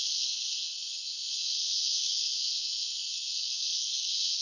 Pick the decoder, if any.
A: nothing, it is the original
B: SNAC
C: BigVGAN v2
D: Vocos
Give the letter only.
B